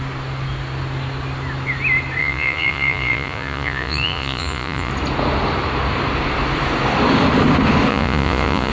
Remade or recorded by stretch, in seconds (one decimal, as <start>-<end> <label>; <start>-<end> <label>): 0.0-2.2 recorded; 2.2-4.9 remade; 4.9-7.9 recorded; 7.9-8.7 remade